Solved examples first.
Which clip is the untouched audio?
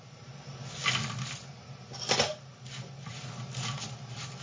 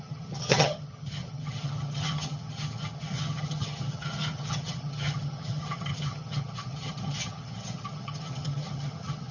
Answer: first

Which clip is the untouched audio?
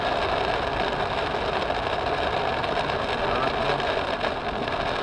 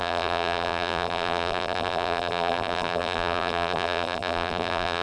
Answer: first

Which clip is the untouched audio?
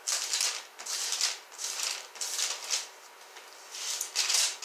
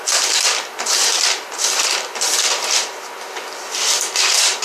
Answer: first